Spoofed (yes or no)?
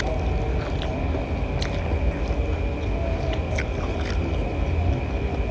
no